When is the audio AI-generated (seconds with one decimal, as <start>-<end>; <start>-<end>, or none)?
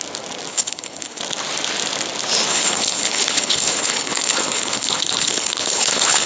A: 0.5-1.2; 2.5-6.3